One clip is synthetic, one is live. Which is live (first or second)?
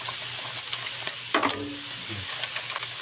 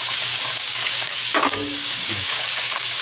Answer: first